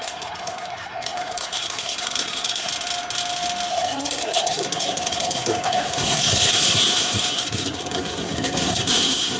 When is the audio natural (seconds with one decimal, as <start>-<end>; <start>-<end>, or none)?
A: 2.7-3.7